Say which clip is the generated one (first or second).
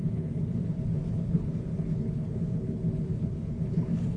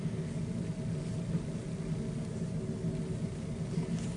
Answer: first